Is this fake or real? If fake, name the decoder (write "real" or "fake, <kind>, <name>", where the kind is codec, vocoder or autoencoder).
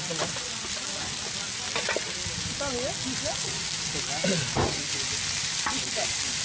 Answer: real